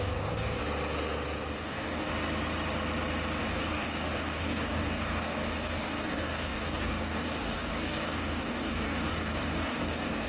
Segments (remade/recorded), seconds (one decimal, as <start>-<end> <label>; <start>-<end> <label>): 0.0-0.6 remade; 0.6-1.6 recorded; 1.6-2.1 remade; 2.1-3.4 recorded; 3.4-10.3 remade

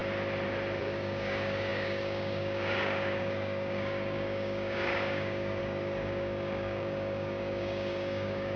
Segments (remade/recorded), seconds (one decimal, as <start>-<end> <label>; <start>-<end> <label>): 0.0-0.8 recorded; 0.8-8.6 remade

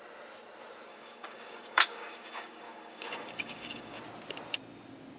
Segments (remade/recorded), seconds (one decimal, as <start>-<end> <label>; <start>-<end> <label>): 0.0-0.9 recorded; 0.9-4.0 remade; 4.0-5.2 recorded

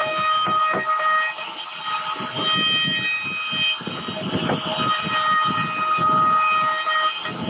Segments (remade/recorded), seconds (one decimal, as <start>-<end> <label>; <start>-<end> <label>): 0.0-0.6 remade; 0.6-7.5 recorded

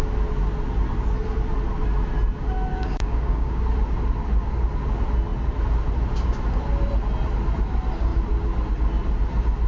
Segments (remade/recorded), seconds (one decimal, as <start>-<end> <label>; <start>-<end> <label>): 0.0-2.7 recorded; 2.7-3.6 remade; 3.6-9.7 recorded

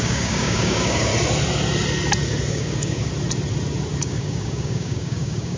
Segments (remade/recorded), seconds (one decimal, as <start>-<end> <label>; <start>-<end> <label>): 0.0-1.1 remade; 1.1-2.5 recorded; 2.5-3.1 remade; 3.1-4.0 recorded; 4.0-5.6 remade

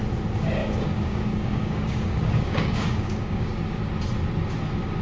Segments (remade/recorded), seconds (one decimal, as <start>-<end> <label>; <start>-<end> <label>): 0.0-0.6 recorded; 0.6-3.6 remade; 3.6-5.0 recorded

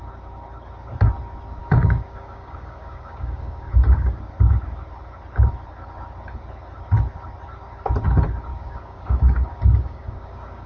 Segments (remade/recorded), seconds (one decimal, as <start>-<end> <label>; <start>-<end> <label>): 0.0-1.6 recorded; 1.6-4.2 remade; 4.2-8.5 recorded; 8.5-10.7 remade